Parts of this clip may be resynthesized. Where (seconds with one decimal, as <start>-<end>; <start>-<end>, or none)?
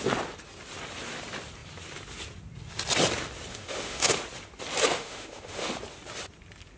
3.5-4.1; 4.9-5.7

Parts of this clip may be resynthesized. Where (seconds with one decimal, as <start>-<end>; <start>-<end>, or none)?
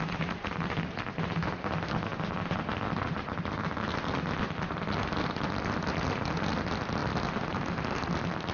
none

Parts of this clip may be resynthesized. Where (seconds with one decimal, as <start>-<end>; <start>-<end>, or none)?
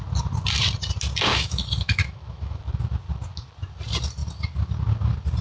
1.3-2.6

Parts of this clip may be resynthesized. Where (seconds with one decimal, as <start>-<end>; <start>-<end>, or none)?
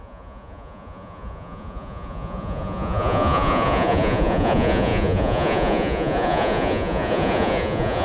0.0-8.0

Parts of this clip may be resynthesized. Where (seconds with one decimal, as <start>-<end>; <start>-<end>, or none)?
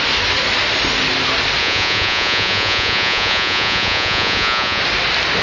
1.6-4.8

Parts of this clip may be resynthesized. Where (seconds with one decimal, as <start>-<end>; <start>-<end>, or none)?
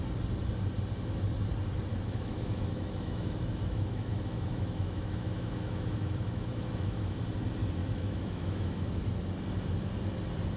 1.9-7.2; 7.8-9.0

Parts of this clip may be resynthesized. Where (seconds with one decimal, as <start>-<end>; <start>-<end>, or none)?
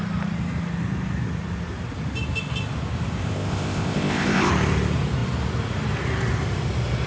3.2-4.5